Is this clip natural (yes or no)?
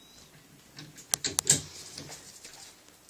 yes